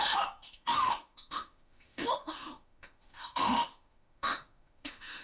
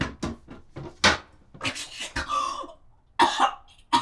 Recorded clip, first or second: second